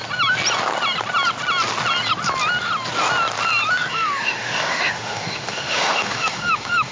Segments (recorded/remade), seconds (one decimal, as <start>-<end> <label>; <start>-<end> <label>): 0.0-3.9 recorded; 3.9-6.9 remade